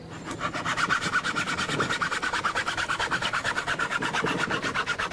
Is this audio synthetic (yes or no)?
no